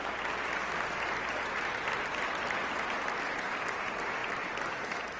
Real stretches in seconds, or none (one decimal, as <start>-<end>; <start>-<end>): 0.0-5.2